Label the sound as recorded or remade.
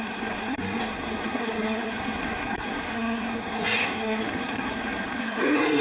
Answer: remade